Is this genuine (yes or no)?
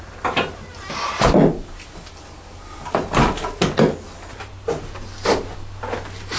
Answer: yes